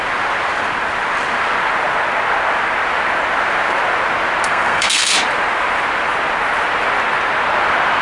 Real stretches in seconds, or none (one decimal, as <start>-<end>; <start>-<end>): 0.0-4.5; 5.1-8.0